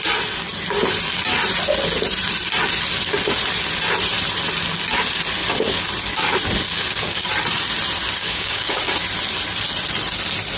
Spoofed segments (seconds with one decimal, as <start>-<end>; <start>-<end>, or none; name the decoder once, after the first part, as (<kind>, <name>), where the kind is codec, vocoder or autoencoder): 6.7-7.3 (codec, DAC); 8.2-8.8